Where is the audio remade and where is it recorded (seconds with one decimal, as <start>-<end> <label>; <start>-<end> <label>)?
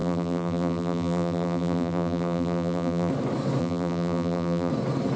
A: 0.0-3.1 remade; 3.1-3.6 recorded; 3.6-4.7 remade; 4.7-5.2 recorded